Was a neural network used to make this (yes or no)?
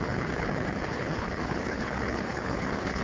yes